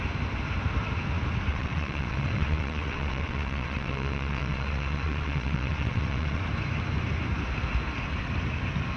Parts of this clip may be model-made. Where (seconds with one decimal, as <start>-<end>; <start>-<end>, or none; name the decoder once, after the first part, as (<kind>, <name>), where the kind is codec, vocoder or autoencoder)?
1.5-6.4 (vocoder, WaveNeXt)